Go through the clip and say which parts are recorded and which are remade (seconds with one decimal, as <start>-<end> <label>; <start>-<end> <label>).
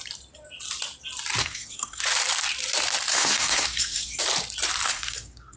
0.0-1.4 recorded; 1.4-2.0 remade; 2.0-3.1 recorded; 3.1-4.2 remade; 4.2-4.9 recorded; 4.9-5.6 remade